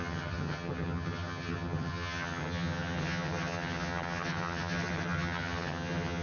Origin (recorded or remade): remade